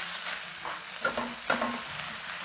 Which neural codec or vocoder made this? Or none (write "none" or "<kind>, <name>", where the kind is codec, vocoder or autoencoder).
none